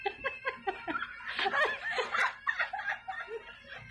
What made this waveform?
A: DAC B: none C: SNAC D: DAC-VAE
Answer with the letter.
B